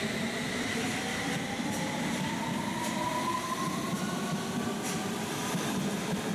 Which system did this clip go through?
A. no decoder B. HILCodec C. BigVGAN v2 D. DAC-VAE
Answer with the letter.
C